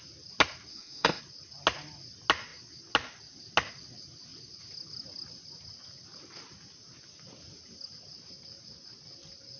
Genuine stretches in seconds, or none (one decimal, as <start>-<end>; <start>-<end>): 0.0-0.7; 1.2-9.6